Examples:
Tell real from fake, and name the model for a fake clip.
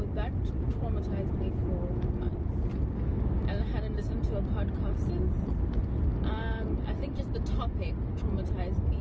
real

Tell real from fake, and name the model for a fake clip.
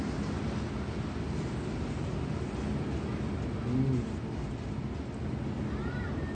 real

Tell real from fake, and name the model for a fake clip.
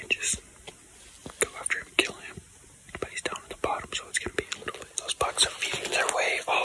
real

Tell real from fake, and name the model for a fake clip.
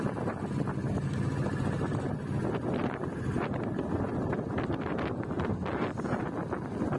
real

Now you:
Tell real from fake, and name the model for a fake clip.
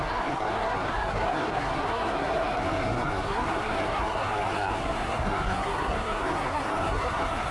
fake, codec, SNAC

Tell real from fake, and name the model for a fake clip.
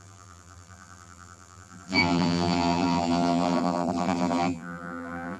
fake, vocoder, BigVGAN v2